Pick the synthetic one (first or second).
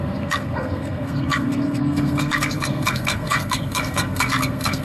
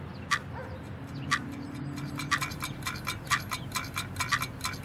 first